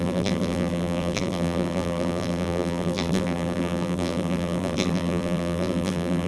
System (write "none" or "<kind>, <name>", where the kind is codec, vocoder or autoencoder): vocoder, BigVGAN v2